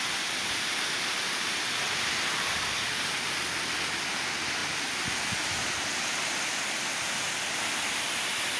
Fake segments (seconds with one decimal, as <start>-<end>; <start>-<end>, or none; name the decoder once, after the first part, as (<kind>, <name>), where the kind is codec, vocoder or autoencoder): none